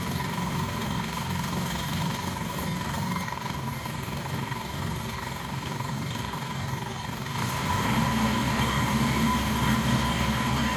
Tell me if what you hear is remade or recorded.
remade